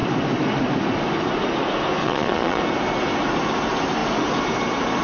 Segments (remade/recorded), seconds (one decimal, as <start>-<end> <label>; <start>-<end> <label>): 0.0-2.0 recorded; 2.0-2.6 remade; 2.6-5.0 recorded